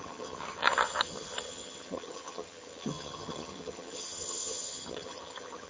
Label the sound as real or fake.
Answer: fake